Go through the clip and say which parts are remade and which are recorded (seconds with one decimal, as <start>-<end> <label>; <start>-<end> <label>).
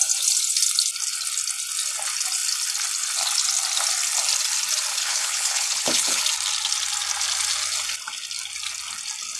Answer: 0.0-4.9 recorded; 4.9-6.2 remade; 6.2-9.4 recorded